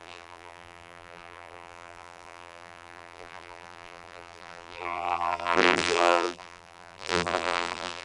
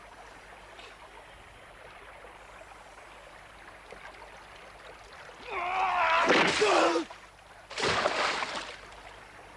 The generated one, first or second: first